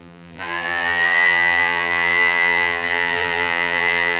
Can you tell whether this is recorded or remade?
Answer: remade